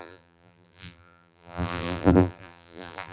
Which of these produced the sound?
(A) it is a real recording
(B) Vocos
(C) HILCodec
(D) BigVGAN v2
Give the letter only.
D